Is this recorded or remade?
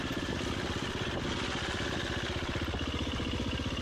recorded